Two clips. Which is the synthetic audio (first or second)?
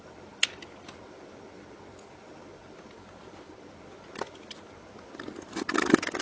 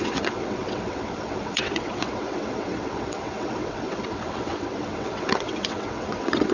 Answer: second